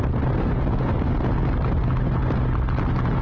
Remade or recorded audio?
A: recorded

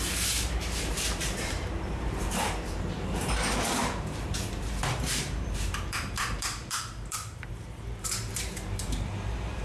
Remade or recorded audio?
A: remade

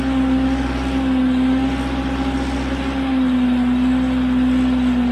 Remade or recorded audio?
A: recorded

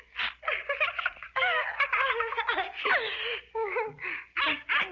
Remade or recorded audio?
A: recorded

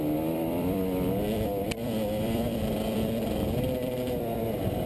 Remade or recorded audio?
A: remade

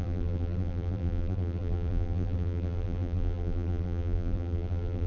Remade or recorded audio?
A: remade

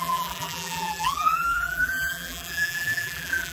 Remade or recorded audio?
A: remade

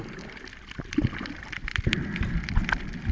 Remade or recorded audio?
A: remade